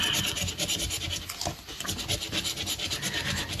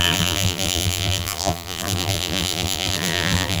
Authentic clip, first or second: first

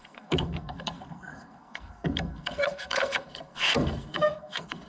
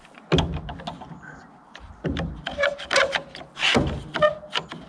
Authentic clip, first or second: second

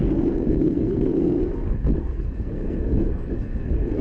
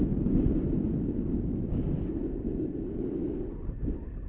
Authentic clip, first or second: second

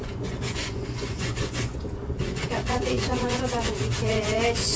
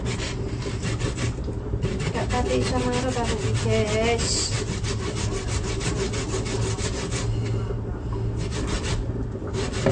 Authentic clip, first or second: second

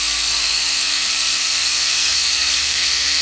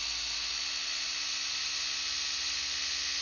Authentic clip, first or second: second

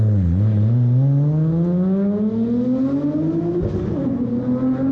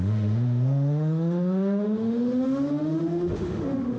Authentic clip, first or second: first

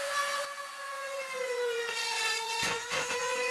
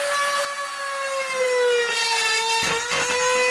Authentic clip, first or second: second